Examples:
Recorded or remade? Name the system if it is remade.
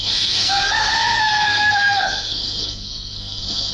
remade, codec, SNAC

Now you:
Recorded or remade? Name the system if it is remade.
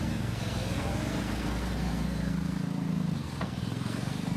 remade, codec, SNAC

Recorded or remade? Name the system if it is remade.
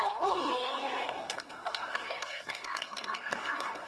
remade, codec, SNAC